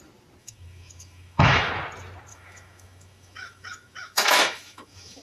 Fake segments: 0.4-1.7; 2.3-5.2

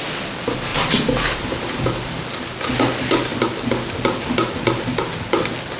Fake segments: 0.7-2.2

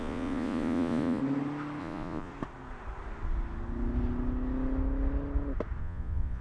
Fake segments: 0.0-1.2; 1.8-2.3; 5.8-6.4

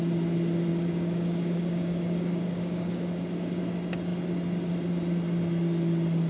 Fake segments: 0.7-3.6

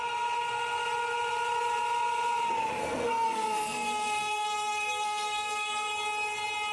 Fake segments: 2.8-5.9